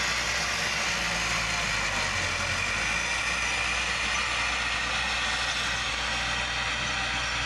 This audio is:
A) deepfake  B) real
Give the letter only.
B